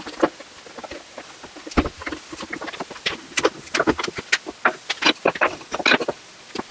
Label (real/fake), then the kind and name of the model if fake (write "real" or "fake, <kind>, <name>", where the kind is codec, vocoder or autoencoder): real